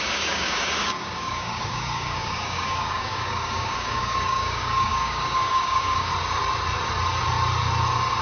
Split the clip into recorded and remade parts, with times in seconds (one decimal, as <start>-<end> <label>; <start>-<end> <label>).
0.0-6.1 remade; 6.1-8.2 recorded